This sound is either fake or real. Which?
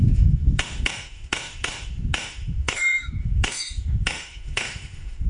fake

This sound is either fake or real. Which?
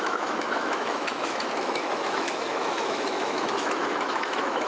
fake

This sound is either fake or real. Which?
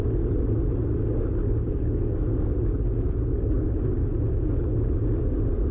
real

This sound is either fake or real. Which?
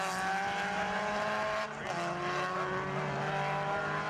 real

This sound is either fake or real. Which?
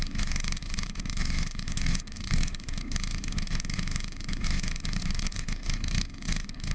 fake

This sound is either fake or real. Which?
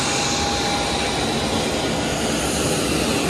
real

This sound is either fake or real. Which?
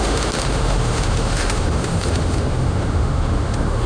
fake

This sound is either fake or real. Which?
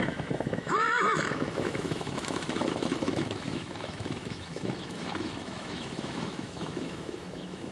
fake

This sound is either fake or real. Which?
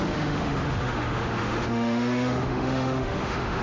fake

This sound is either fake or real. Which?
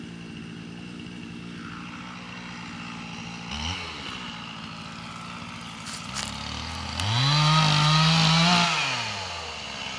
real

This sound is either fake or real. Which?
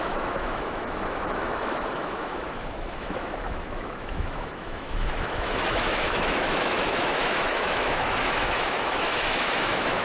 fake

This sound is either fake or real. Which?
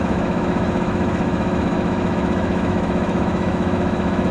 fake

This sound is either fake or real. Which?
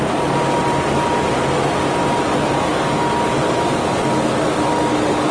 real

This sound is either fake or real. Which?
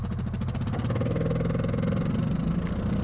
real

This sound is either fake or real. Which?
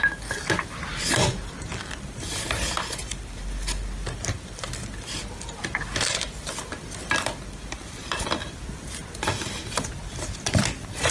real